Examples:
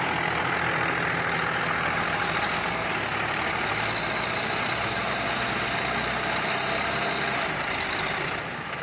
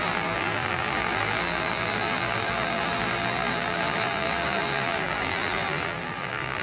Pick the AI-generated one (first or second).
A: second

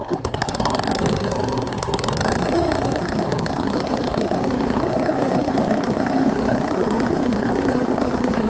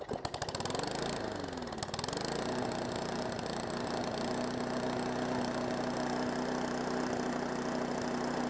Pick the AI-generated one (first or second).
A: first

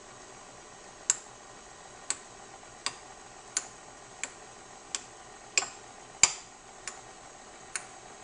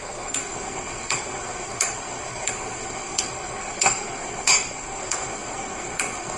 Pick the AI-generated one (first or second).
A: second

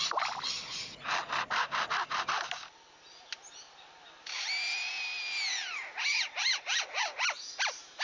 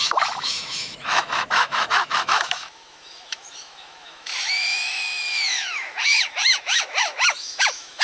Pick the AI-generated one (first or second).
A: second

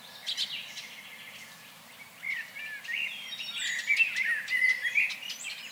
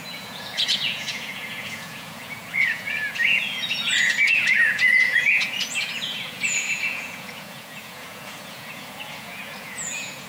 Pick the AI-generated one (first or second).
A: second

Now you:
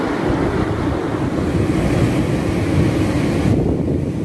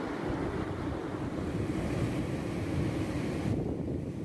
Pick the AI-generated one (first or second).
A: second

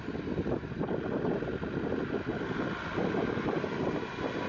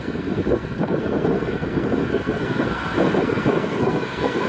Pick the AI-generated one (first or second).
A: second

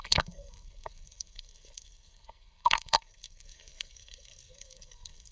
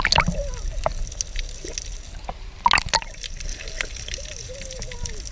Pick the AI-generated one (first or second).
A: first